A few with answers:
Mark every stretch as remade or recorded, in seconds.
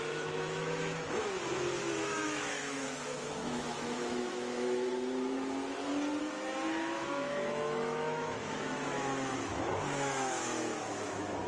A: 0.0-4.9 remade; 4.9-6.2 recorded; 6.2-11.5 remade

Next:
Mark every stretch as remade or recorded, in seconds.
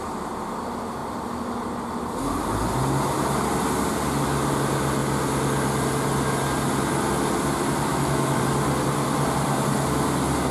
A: 0.0-7.9 recorded; 7.9-8.4 remade; 8.4-10.5 recorded